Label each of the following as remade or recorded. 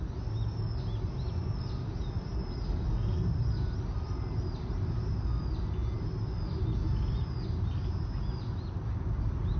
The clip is recorded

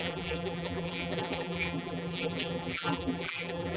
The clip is remade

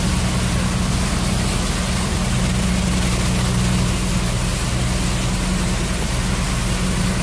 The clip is recorded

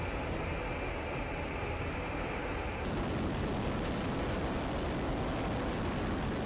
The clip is recorded